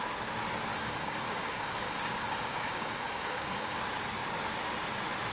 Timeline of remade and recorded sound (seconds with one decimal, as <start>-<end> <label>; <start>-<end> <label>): 0.0-0.7 recorded; 0.7-3.8 remade; 3.8-5.3 recorded